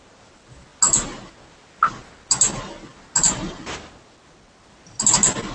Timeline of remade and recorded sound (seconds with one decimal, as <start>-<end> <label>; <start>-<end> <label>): 0.0-5.5 recorded